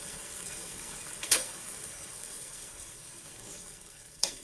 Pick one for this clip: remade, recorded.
remade